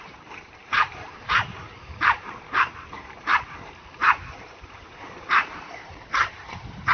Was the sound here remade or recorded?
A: remade